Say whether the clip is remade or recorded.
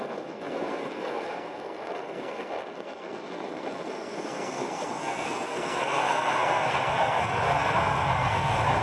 remade